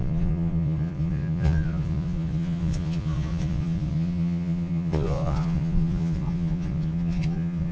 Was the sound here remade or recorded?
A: remade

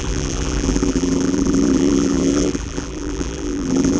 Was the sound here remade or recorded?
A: remade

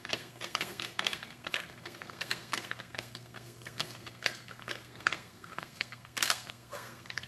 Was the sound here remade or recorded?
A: remade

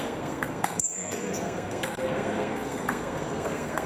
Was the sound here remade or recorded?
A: remade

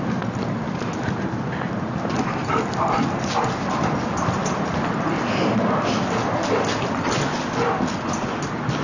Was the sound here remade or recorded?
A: recorded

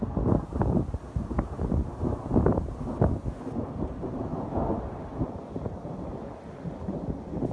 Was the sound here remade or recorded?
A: recorded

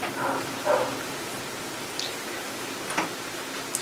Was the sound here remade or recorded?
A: recorded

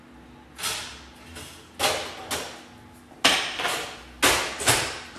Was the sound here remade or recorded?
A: recorded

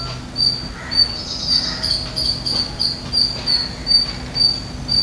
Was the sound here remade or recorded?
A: recorded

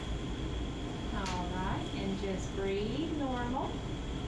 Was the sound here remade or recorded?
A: recorded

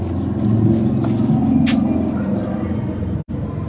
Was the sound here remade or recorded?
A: recorded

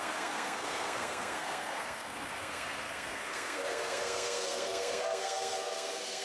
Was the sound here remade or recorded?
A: remade